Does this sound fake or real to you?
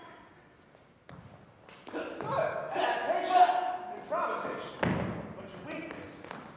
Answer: real